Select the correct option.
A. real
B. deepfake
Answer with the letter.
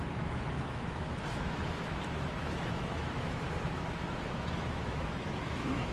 B